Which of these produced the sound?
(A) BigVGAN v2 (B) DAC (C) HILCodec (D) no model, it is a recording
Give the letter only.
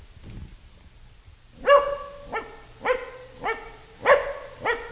D